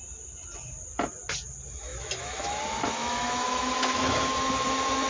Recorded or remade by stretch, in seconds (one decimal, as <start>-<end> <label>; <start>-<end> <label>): 0.0-1.9 recorded; 1.9-2.6 remade; 2.6-3.0 recorded; 3.0-4.2 remade; 4.2-5.1 recorded

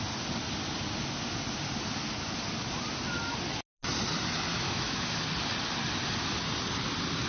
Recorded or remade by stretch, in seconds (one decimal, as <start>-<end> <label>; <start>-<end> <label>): 0.0-4.5 recorded; 4.5-5.2 remade; 5.2-7.3 recorded

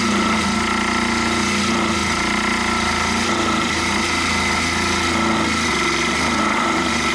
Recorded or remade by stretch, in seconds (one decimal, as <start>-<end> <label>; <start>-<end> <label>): 0.0-7.1 recorded

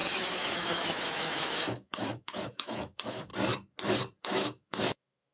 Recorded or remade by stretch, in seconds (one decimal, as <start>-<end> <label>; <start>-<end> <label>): 0.0-3.3 remade; 3.3-4.2 recorded; 4.2-5.3 remade